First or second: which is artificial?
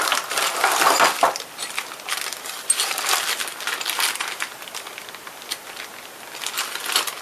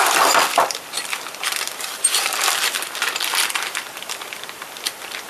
second